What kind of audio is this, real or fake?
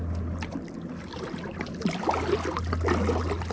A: real